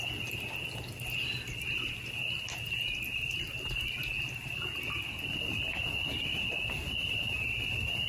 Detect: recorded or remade recorded